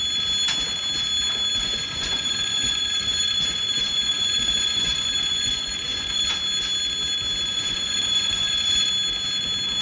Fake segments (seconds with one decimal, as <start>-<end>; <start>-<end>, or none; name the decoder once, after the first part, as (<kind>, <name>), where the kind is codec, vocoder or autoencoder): 1.6-6.3 (vocoder, Vocos); 7.5-8.9

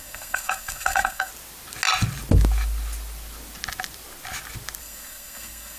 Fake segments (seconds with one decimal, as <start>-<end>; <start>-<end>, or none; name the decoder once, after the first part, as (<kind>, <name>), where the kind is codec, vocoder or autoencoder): 0.0-1.3 (codec, SNAC); 4.8-5.8

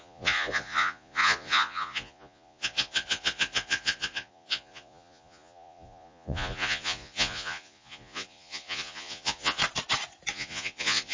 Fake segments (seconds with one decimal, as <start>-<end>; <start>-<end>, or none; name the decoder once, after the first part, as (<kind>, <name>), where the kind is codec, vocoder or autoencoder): 0.0-9.6 (vocoder, Vocos); 10.3-11.1

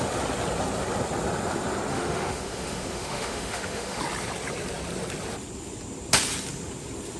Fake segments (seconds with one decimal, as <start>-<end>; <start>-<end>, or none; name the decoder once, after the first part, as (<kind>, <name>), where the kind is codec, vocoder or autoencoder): 1.9-4.0 (autoencoder, DAC-VAE)

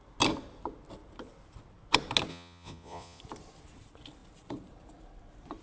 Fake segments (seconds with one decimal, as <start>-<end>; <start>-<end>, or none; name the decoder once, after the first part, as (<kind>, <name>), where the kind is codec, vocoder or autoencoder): 2.3-3.2 (vocoder, Vocos)

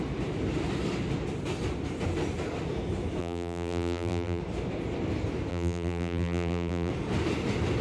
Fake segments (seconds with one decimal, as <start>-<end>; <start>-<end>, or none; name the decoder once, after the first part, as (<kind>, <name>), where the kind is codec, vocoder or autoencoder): 3.2-4.4 (vocoder, BigVGAN v2); 5.5-6.9

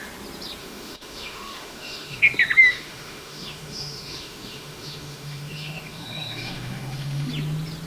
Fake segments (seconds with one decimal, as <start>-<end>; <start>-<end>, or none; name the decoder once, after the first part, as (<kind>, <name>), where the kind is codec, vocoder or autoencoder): 0.6-2.2 (autoencoder, DAC-VAE); 2.6-7.3

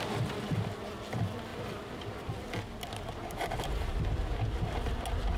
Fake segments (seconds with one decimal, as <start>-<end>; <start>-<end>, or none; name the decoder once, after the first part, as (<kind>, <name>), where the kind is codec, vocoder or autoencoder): none